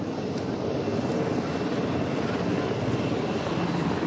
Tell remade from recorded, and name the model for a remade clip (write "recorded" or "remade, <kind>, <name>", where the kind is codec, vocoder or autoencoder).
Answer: recorded